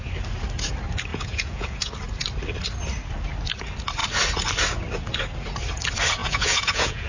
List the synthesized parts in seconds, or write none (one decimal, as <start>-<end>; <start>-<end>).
1.1-1.9; 6.2-7.1